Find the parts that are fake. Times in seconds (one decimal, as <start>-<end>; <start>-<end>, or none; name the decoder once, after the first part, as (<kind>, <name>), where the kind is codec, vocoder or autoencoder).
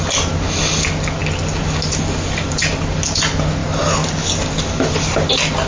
none